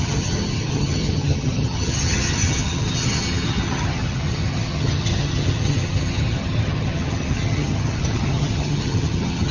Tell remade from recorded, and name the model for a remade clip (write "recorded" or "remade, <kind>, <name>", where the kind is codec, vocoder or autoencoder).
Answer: remade, vocoder, HiFi-GAN